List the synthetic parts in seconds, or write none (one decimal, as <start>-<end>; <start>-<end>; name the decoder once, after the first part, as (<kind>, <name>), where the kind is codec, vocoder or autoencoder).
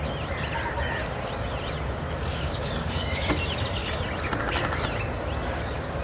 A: 2.3-3.3 (codec, DAC)